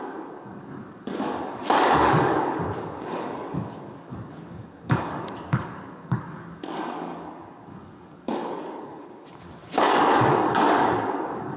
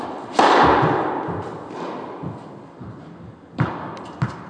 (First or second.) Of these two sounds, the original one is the second